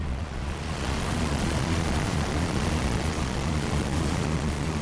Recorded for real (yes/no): no